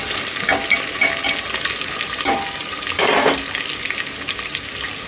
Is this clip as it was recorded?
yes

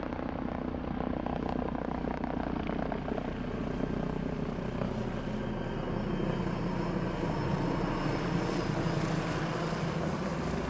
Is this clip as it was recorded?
yes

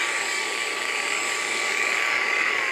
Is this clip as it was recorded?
no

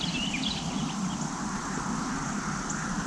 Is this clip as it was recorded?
yes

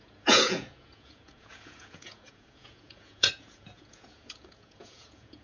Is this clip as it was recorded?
no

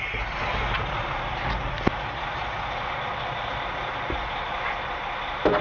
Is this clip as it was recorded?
yes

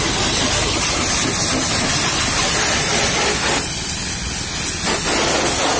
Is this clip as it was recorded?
yes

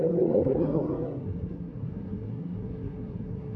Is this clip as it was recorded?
no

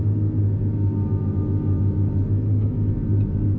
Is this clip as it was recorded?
yes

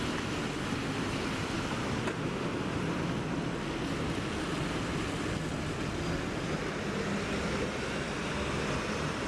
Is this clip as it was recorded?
yes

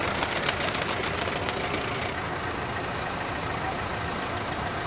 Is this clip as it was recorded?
yes